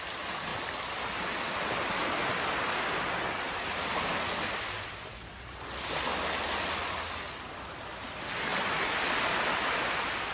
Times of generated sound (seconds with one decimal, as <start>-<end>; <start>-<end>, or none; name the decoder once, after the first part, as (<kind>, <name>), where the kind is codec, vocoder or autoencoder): 0.5-5.1 (vocoder, BigVGAN v2)